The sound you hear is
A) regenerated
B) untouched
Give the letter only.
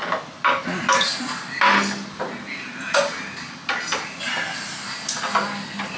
B